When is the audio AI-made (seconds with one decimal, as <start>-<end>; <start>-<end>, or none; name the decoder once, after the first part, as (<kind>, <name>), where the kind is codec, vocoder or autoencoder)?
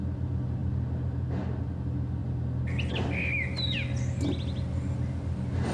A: none